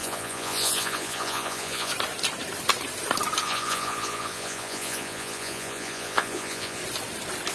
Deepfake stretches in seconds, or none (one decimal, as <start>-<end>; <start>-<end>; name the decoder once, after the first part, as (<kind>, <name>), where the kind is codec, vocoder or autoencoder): 0.0-1.9 (vocoder, Vocos); 3.4-6.8